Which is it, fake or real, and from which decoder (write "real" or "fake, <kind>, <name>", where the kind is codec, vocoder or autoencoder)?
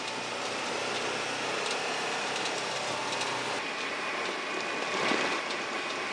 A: real